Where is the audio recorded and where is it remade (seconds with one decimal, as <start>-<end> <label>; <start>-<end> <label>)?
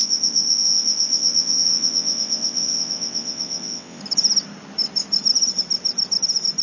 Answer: 0.0-4.0 remade; 4.0-6.6 recorded